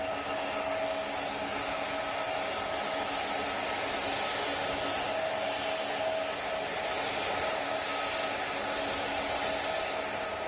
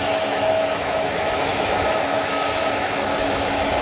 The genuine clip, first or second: first